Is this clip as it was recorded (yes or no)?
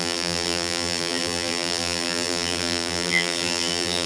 no